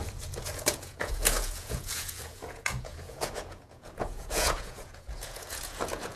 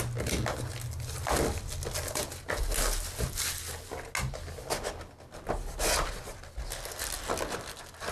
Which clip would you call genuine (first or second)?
second